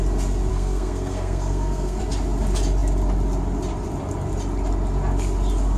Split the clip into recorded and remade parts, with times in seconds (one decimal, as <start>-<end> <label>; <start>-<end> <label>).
0.0-0.5 recorded; 0.5-2.0 remade; 2.0-5.8 recorded